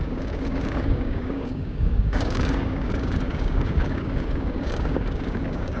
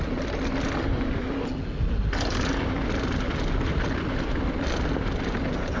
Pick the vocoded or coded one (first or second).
first